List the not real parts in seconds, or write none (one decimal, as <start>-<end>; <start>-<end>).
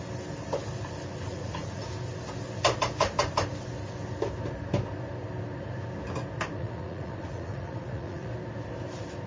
1.3-1.8; 6.6-8.3